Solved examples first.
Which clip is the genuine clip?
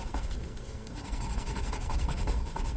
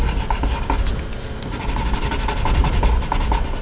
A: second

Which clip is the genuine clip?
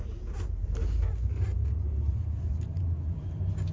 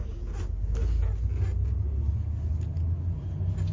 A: second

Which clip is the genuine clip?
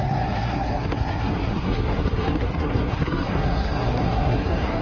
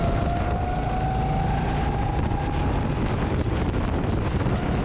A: second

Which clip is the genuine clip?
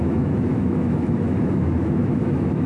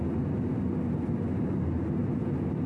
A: second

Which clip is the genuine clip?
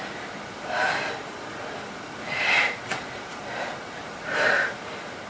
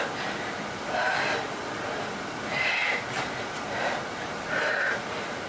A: second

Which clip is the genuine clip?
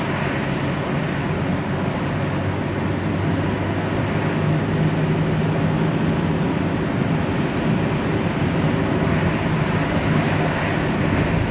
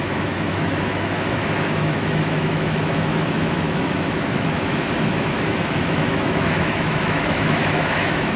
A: first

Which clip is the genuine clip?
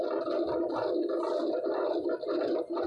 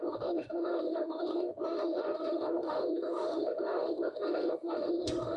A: first